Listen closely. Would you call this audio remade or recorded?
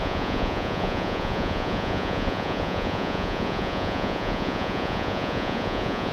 remade